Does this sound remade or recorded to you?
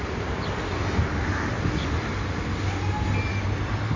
recorded